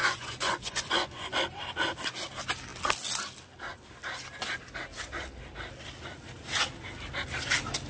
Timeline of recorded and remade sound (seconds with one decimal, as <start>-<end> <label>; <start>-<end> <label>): 0.0-1.4 remade; 1.4-7.9 recorded